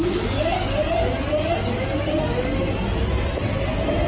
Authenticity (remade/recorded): recorded